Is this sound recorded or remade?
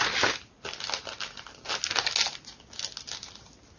recorded